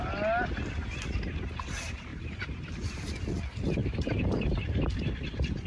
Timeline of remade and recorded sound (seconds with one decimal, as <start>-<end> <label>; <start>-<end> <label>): 0.0-2.1 recorded; 2.1-3.0 remade; 3.0-3.8 recorded; 3.8-4.6 remade; 4.6-5.7 recorded